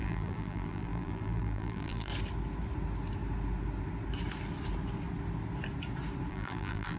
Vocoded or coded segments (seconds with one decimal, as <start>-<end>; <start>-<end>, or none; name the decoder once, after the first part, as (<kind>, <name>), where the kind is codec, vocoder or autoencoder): 0.0-2.1 (vocoder, BigVGAN v2); 6.3-7.0

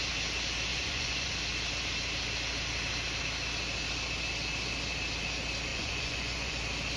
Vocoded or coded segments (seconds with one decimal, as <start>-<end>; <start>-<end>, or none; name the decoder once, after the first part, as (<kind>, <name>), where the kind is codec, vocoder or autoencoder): 0.7-1.3 (vocoder, Vocos); 5.7-6.6

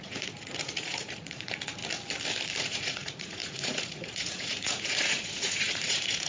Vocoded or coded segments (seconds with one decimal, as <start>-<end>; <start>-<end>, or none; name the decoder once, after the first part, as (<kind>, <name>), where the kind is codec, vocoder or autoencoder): 0.0-1.8 (vocoder, Vocos); 2.6-6.3

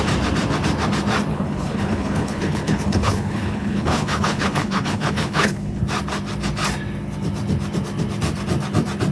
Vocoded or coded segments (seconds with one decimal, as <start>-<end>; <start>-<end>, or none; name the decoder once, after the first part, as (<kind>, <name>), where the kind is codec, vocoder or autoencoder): 1.3-5.8 (codec, HILCodec)